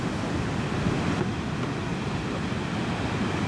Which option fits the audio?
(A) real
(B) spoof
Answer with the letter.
A